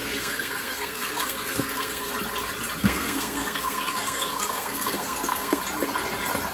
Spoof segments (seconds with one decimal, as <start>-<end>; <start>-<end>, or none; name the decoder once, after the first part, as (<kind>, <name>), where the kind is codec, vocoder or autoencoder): 0.0-2.1 (codec, SNAC); 2.8-5.6